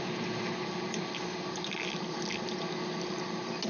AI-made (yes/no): no